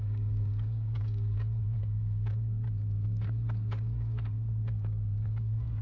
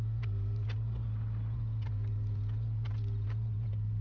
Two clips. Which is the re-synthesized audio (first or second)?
first